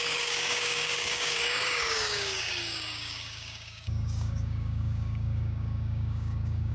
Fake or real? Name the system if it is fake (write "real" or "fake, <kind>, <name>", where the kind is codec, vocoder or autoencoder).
fake, codec, DAC